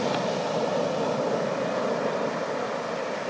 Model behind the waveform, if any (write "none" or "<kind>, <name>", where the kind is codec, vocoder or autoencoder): none